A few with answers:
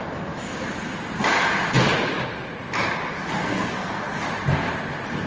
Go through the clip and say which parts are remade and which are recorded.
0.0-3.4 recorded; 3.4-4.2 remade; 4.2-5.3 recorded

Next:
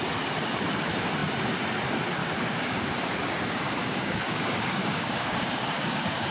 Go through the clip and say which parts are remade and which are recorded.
0.0-2.2 recorded; 2.2-6.3 remade